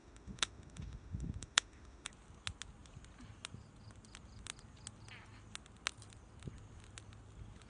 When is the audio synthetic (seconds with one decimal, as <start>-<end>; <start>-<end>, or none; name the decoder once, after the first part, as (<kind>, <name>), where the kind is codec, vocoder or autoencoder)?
0.0-2.1 (autoencoder, DAC-VAE)